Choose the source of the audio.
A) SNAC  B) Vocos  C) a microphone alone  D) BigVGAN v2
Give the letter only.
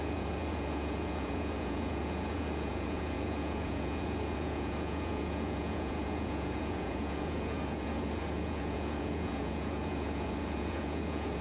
B